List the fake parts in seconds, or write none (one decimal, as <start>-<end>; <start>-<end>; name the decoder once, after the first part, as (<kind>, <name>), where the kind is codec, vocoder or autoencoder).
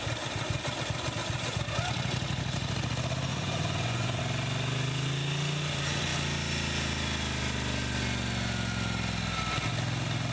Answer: 3.3-4.2 (vocoder, Vocos)